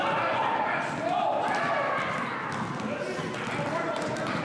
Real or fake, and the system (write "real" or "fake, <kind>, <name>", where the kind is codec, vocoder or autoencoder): real